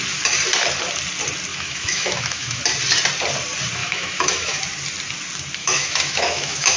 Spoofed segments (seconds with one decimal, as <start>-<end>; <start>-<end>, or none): 1.5-2.6; 3.8-4.6; 5.6-6.8